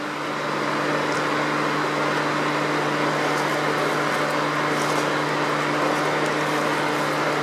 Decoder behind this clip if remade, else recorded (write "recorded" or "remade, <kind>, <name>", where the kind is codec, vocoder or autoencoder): recorded